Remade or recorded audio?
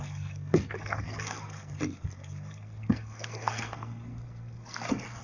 remade